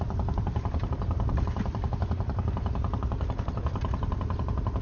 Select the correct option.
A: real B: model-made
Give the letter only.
A